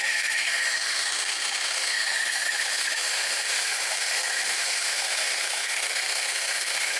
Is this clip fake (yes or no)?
yes